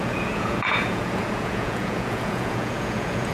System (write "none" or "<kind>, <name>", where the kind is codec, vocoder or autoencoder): vocoder, Vocos